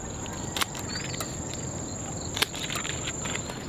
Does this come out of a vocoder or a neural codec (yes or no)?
no